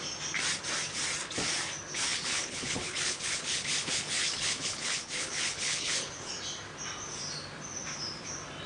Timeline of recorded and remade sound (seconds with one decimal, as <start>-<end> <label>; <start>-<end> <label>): 0.0-2.1 recorded; 2.1-6.3 remade; 6.3-8.7 recorded